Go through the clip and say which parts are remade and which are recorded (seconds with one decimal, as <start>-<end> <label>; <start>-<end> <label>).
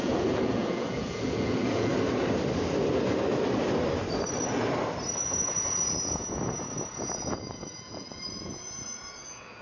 0.0-1.9 remade; 1.9-5.3 recorded; 5.3-9.6 remade